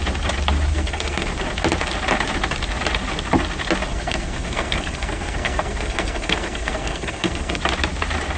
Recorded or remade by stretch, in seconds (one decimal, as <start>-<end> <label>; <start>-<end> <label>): 0.0-0.7 recorded; 0.7-1.3 remade; 1.3-3.9 recorded; 3.9-7.6 remade; 7.6-8.4 recorded